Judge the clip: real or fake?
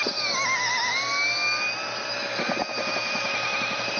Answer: real